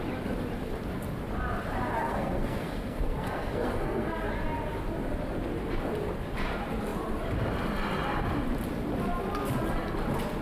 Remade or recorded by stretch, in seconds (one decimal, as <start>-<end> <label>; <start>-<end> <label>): 0.0-2.0 recorded; 2.0-4.3 remade; 4.3-10.4 recorded